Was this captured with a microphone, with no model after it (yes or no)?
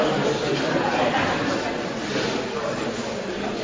yes